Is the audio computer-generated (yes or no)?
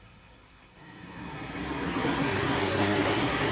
yes